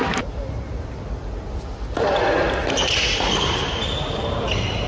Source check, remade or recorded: recorded